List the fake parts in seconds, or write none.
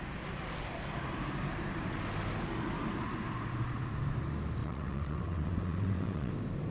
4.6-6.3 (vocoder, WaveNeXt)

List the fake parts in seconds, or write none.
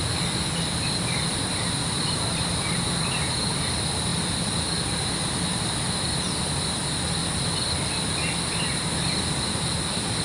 none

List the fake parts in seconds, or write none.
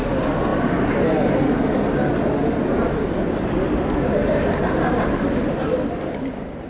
none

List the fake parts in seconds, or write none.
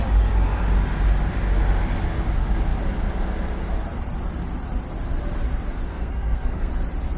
5.9-6.7 (codec, SNAC)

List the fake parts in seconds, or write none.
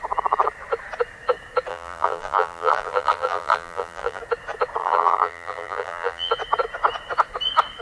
1.7-4.2 (vocoder, BigVGAN v2); 4.8-6.3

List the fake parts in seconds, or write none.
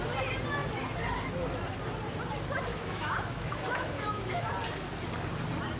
2.7-4.4 (autoencoder, DAC-VAE)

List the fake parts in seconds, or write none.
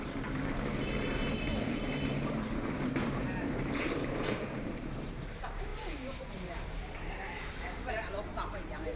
0.0-9.0 (vocoder, BigVGAN v2)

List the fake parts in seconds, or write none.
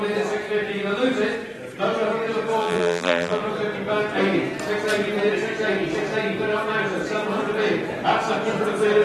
2.6-3.4 (vocoder, BigVGAN v2)